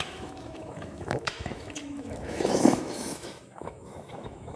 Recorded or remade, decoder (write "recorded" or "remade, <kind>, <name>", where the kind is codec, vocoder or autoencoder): remade, autoencoder, DAC-VAE